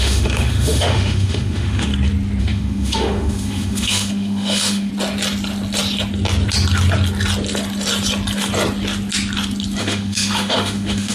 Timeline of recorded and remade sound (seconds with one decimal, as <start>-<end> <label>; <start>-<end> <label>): 0.0-1.9 remade; 1.9-2.4 recorded; 2.4-4.9 remade; 4.9-9.8 recorded; 9.8-11.1 remade